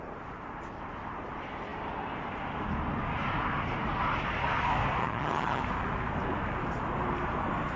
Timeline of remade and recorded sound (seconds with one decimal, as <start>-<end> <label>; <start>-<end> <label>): 0.0-5.0 recorded; 5.0-5.6 remade; 5.6-7.8 recorded